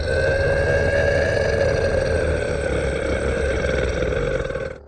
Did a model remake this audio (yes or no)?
no